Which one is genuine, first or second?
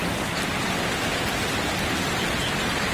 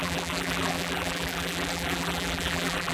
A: first